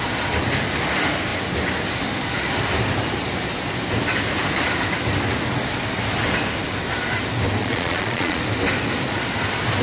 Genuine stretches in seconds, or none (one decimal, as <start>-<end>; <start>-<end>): 0.0-7.6; 8.4-9.8